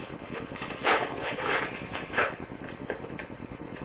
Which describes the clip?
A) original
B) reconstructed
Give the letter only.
B